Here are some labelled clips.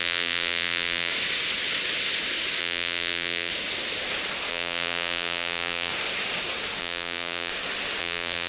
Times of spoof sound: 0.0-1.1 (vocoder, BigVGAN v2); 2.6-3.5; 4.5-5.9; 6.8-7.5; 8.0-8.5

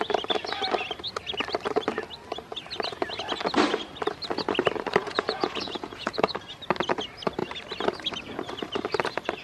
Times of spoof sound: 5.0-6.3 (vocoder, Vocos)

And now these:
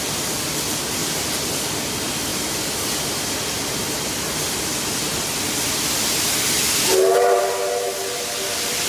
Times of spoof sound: 1.0-1.9 (vocoder, BigVGAN v2)